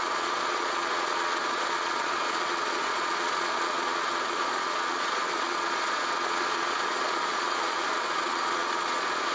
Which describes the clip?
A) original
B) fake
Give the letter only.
B